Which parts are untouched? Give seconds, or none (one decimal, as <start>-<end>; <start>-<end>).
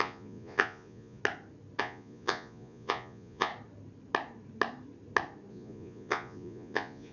1.2-1.8; 3.5-5.5